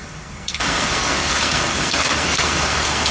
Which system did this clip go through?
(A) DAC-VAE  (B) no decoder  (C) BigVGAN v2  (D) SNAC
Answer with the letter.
D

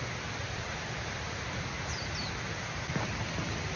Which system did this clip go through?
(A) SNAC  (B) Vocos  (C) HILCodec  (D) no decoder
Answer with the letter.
D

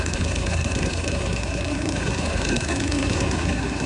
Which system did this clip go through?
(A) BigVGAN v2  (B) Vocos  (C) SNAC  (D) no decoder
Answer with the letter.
C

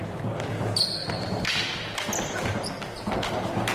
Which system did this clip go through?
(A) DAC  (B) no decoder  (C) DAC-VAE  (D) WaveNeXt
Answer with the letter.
B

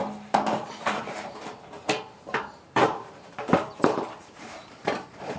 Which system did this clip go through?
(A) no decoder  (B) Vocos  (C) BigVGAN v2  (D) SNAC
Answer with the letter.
C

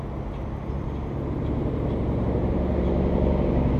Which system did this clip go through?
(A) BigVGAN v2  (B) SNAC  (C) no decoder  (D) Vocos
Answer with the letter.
C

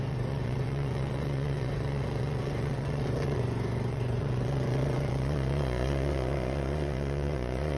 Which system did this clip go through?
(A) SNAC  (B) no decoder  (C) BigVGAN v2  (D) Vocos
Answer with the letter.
D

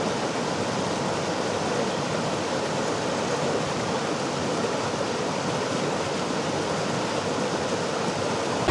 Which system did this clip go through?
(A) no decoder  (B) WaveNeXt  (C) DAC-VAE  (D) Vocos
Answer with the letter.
A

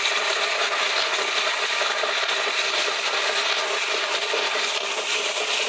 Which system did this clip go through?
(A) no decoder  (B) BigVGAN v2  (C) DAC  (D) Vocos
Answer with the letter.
A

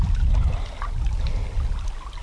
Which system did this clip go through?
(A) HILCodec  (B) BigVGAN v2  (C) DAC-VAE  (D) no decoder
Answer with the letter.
D